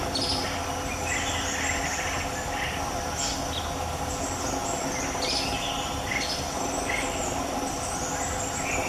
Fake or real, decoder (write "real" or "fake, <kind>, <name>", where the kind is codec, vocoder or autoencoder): real